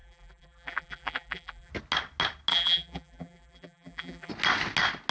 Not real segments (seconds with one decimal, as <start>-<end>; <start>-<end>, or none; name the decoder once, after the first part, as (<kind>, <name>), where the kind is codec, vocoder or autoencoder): 0.0-1.7 (vocoder, BigVGAN v2); 2.5-4.3